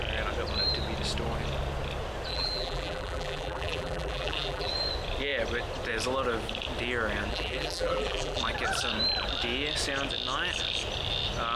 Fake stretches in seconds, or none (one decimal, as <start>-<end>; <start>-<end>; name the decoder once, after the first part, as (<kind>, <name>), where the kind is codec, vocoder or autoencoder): 2.3-4.7 (vocoder, BigVGAN v2); 7.3-8.4